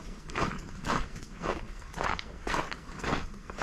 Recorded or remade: remade